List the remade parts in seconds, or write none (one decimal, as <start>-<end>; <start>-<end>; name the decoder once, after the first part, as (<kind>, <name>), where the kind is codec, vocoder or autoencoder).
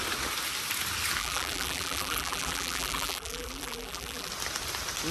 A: 1.2-4.3 (vocoder, BigVGAN v2)